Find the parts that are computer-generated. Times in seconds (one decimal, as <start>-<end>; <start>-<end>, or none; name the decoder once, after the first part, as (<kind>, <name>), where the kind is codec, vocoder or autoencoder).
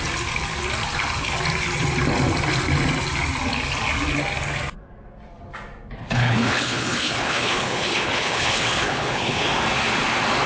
6.0-9.4 (codec, HILCodec)